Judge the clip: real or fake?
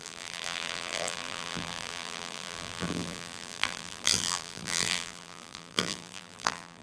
fake